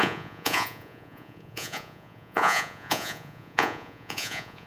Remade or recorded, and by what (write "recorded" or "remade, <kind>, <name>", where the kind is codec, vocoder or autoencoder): remade, vocoder, Vocos